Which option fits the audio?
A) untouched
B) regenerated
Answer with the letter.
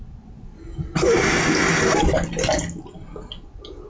A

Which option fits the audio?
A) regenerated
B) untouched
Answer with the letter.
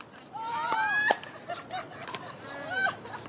B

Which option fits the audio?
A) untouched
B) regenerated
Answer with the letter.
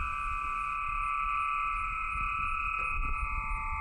A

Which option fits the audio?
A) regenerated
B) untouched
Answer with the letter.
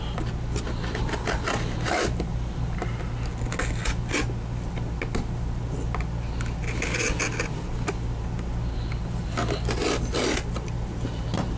B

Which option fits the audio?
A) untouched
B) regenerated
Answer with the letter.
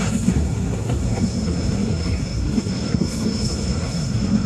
B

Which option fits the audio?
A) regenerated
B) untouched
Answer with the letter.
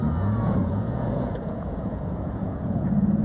A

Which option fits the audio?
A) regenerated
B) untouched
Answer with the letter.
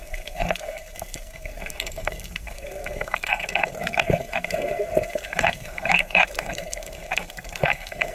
A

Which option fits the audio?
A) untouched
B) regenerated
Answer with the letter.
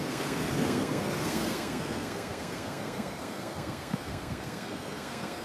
B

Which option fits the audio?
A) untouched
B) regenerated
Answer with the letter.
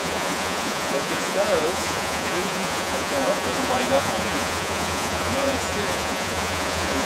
B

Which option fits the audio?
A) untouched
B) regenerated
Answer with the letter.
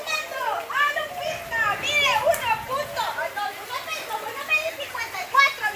A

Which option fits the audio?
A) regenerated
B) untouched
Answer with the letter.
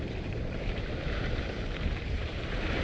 A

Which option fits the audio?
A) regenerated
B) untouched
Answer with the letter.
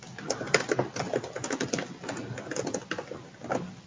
B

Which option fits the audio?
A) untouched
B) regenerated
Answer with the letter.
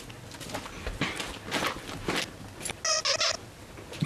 A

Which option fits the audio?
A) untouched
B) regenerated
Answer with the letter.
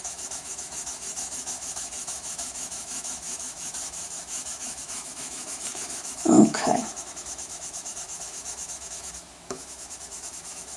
B